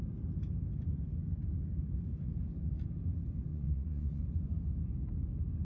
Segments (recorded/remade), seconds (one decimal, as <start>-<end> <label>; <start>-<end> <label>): 0.0-3.5 recorded; 3.5-4.2 remade; 4.2-5.6 recorded